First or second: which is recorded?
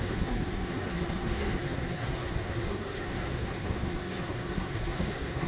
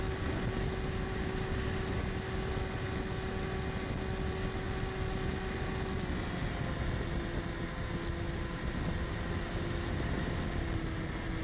second